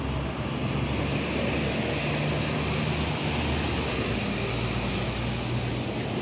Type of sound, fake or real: real